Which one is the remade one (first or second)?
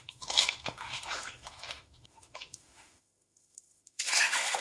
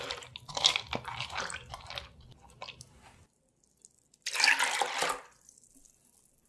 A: first